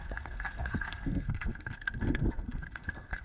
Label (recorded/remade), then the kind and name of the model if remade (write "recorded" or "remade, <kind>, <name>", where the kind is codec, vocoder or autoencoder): remade, codec, SNAC